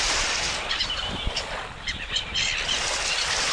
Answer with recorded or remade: recorded